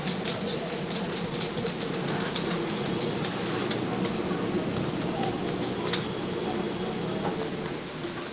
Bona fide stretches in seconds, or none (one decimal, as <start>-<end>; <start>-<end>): 0.0-0.5; 3.1-8.3